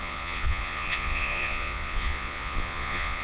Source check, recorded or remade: remade